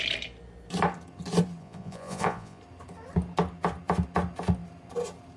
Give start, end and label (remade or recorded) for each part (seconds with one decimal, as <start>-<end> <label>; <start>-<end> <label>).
0.0-1.6 recorded; 1.6-2.6 remade; 2.6-5.4 recorded